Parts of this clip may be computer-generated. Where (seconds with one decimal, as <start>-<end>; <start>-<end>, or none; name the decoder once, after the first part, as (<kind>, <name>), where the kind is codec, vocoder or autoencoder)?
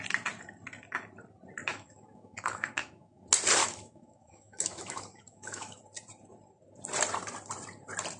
1.7-3.2 (autoencoder, DAC-VAE); 3.6-5.8